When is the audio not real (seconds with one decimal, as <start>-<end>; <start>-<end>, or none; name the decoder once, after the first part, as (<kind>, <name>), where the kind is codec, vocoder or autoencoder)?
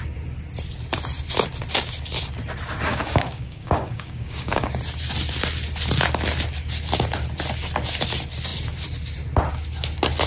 2.9-4.8 (codec, DAC)